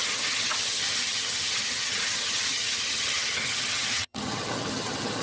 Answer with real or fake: fake